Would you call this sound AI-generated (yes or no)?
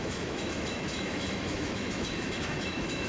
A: yes